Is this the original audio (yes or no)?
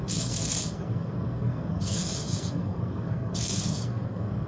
no